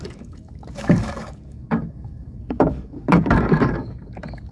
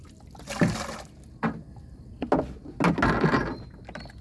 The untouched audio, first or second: second